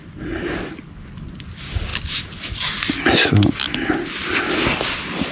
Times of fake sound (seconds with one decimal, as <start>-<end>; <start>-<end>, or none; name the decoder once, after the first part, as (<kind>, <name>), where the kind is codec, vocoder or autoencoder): none